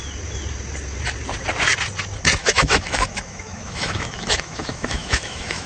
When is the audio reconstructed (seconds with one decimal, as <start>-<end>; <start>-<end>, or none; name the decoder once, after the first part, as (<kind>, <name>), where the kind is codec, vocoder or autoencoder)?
2.4-5.7 (autoencoder, DAC-VAE)